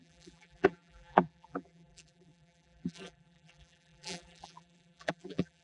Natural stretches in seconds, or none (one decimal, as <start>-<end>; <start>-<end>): none